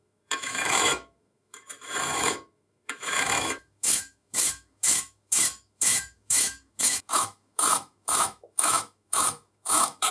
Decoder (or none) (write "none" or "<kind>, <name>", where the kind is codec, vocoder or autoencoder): autoencoder, DAC-VAE